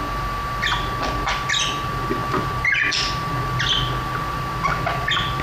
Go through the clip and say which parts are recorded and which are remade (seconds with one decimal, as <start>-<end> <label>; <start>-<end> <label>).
0.0-5.4 recorded

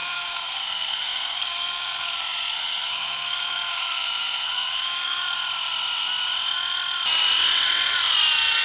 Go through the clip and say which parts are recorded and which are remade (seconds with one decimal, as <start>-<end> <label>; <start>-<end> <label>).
0.0-5.2 remade; 5.2-8.6 recorded

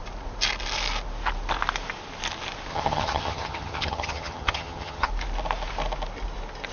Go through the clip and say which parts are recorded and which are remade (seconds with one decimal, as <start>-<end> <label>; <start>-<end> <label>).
0.0-2.7 recorded; 2.7-5.1 remade; 5.1-6.7 recorded

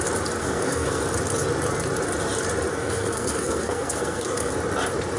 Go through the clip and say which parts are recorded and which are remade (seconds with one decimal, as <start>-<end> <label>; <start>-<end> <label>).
0.0-0.4 recorded; 0.4-1.0 remade; 1.0-2.7 recorded; 2.7-4.5 remade; 4.5-5.2 recorded

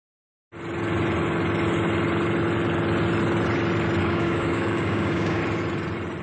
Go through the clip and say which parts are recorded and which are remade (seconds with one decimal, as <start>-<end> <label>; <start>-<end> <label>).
0.0-0.4 remade; 0.4-4.0 recorded; 4.0-5.4 remade; 5.4-6.2 recorded

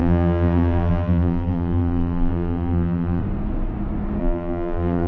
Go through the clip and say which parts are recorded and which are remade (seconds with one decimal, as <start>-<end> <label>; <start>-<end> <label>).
0.0-3.2 remade; 3.2-4.2 recorded; 4.2-5.1 remade

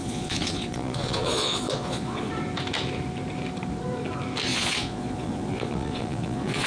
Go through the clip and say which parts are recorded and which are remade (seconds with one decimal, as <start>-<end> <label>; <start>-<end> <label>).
0.0-2.3 remade; 2.3-4.5 recorded; 4.5-6.7 remade